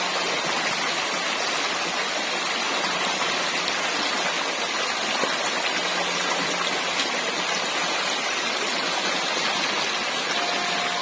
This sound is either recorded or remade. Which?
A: recorded